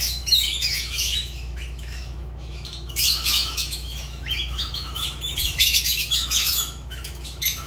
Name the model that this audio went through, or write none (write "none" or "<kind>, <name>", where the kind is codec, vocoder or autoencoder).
autoencoder, DAC-VAE